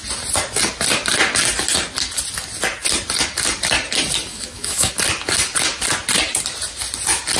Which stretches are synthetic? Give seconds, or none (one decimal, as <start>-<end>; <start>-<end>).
4.3-4.9